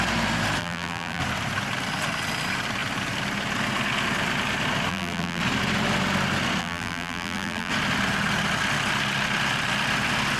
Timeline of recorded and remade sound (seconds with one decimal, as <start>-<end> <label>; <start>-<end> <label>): 0.0-0.6 recorded; 0.6-1.2 remade; 1.2-4.9 recorded; 4.9-5.4 remade; 5.4-6.6 recorded; 6.6-7.7 remade; 7.7-10.4 recorded